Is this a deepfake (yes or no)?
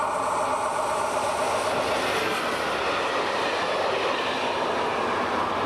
no